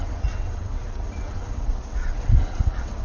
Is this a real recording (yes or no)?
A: no